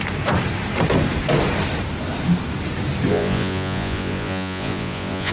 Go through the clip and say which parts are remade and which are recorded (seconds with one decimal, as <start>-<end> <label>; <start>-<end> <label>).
0.0-3.1 recorded; 3.1-5.3 remade